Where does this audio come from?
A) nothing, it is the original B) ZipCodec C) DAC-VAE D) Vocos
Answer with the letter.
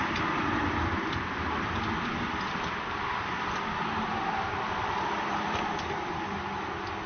A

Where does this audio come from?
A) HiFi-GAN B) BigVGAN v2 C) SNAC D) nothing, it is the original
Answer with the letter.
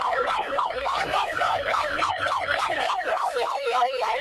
C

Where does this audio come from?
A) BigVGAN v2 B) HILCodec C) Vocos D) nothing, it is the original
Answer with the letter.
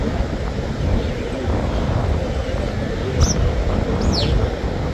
D